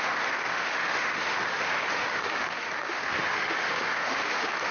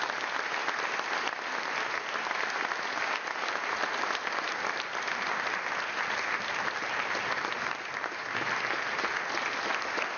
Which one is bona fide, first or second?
second